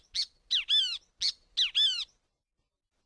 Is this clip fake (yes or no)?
no